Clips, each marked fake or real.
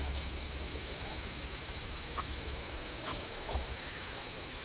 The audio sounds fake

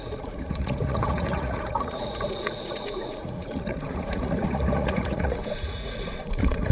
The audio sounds fake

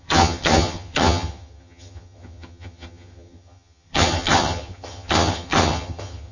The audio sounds fake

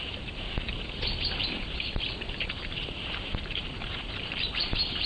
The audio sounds fake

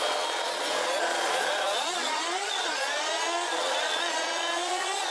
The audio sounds fake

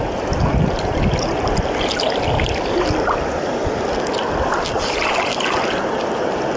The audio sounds real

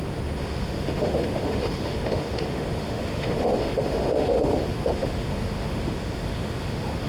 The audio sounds fake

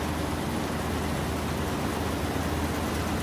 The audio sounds real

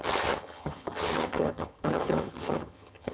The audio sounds fake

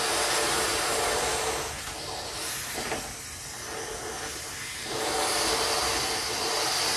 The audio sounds real